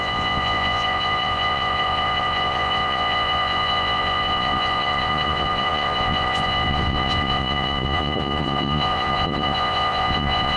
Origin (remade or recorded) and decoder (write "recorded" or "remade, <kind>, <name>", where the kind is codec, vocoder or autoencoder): remade, vocoder, Vocos